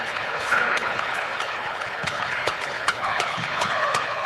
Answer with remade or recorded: remade